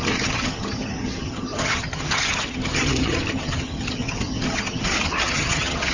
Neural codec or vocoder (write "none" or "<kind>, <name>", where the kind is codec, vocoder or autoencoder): vocoder, HiFi-GAN